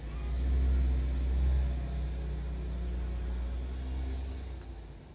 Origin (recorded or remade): recorded